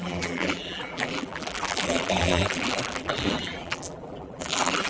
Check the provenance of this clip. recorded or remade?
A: remade